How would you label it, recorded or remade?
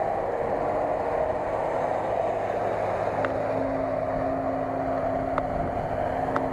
recorded